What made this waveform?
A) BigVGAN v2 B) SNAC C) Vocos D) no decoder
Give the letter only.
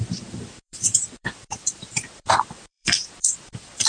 A